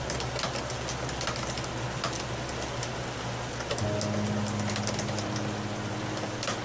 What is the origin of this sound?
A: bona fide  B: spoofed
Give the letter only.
A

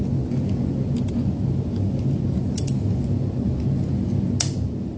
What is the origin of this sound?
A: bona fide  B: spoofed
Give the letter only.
A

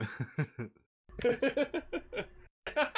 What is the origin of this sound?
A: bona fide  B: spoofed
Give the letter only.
A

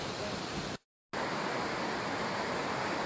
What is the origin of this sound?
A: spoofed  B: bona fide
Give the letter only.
B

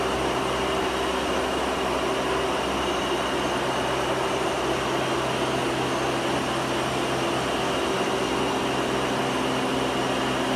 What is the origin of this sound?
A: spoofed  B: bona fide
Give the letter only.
B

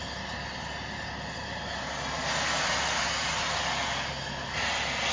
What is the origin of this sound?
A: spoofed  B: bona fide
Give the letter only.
B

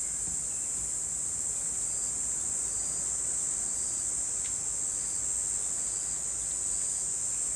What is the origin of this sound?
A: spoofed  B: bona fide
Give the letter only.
B